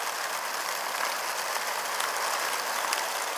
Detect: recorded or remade recorded